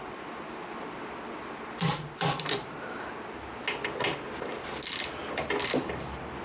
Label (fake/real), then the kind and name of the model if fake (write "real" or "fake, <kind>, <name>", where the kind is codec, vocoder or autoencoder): real